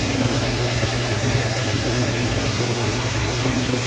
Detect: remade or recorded remade